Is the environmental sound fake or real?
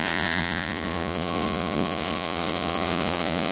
fake